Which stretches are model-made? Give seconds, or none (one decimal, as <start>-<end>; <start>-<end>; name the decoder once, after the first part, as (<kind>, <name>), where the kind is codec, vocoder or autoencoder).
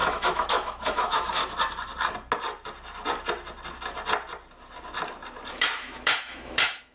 0.0-1.4 (autoencoder, DAC-VAE); 5.5-6.9